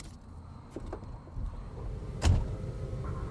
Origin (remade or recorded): recorded